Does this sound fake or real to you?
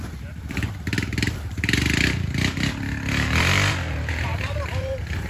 fake